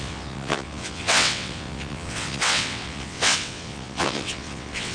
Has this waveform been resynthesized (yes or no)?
yes